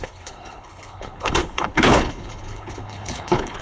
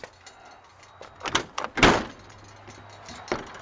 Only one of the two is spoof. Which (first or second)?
first